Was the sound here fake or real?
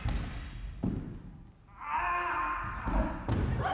real